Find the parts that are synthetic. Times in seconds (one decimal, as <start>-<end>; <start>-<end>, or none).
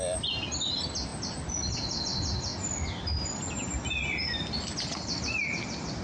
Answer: none